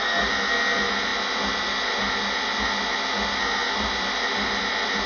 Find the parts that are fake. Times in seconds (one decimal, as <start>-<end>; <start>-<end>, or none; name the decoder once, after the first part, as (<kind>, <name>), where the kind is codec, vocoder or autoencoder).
3.6-4.6 (vocoder, BigVGAN v2)